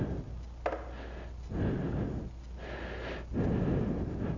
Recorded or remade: recorded